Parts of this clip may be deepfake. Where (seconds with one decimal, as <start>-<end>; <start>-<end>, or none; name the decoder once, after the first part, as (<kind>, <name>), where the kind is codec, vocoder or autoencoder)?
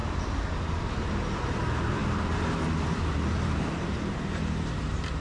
0.9-5.2 (vocoder, BigVGAN v2)